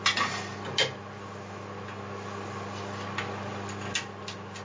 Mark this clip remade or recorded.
recorded